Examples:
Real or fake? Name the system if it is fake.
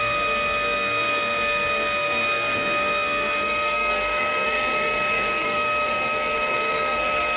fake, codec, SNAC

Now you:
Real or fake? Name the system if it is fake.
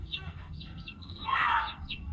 fake, codec, SNAC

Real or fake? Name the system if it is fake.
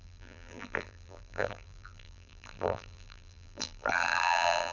fake, vocoder, BigVGAN v2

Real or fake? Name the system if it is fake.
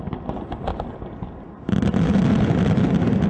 real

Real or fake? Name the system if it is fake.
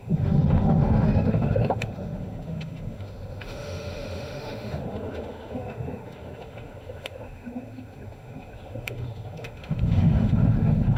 fake, autoencoder, DAC-VAE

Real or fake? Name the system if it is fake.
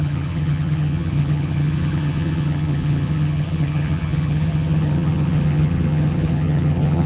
fake, vocoder, HiFi-GAN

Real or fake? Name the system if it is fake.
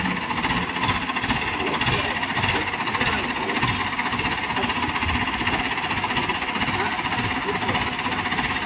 real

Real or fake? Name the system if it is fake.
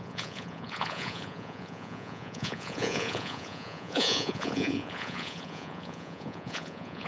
fake, vocoder, Vocos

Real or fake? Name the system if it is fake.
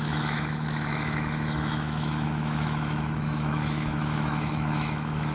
fake, autoencoder, DAC-VAE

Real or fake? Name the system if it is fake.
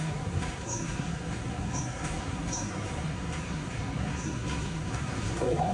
fake, codec, SNAC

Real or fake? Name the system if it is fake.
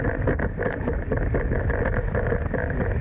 real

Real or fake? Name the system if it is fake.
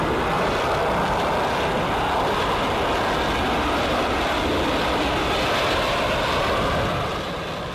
real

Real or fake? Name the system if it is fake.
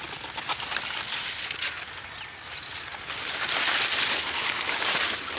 real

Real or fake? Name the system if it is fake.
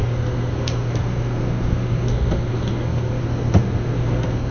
fake, codec, SNAC